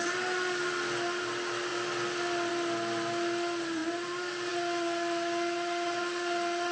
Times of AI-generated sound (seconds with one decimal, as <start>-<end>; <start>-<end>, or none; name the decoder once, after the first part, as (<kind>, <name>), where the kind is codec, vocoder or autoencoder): none